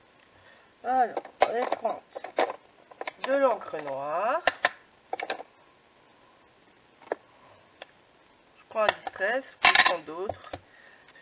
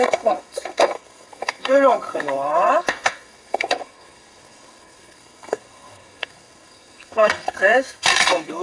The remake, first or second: second